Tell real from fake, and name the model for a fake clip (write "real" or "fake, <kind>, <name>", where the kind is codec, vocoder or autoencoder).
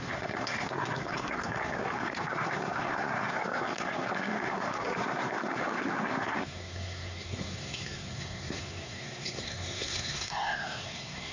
fake, codec, SNAC